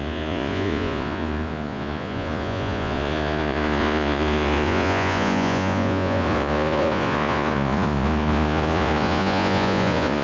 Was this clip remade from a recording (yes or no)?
yes